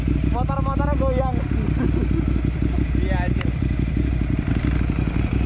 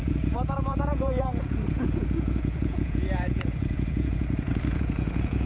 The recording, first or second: first